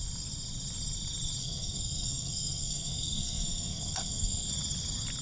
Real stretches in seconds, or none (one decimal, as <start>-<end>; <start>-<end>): 0.0-1.4; 4.5-5.2